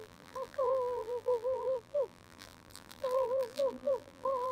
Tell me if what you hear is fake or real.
fake